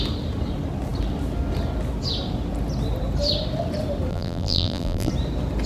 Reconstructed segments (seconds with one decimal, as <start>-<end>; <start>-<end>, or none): 4.1-5.1